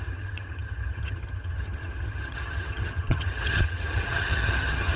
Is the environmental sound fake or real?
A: fake